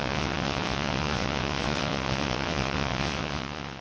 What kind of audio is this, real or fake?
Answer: fake